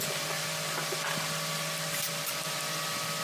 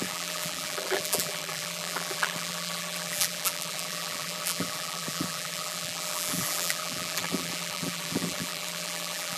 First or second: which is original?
first